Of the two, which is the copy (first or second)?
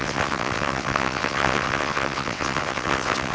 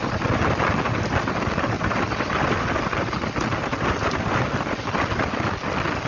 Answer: first